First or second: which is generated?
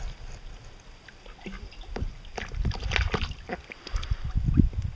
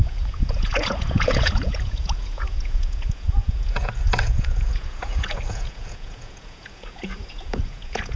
second